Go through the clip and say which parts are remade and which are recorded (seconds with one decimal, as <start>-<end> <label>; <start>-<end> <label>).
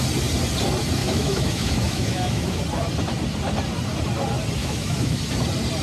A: 0.0-1.0 recorded; 1.0-2.6 remade; 2.6-4.6 recorded; 4.6-5.2 remade; 5.2-5.8 recorded